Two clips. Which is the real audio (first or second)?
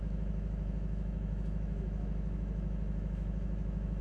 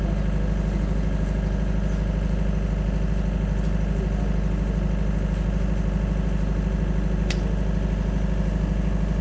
second